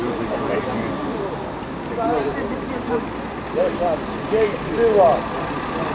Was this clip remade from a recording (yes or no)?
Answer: no